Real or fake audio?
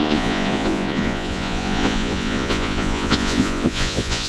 fake